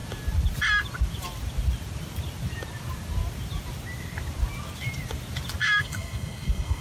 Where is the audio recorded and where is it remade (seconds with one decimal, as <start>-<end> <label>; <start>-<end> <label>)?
0.0-5.6 recorded; 5.6-6.8 remade